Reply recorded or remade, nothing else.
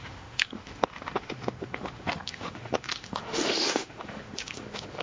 remade